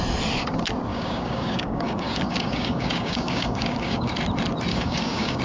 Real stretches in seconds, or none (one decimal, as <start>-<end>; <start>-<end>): 0.0-0.9; 4.1-4.7